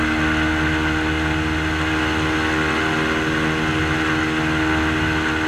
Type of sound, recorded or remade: recorded